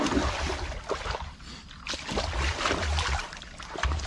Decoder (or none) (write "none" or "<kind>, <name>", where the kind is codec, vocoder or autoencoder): none